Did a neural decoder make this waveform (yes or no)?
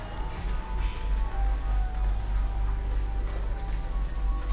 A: no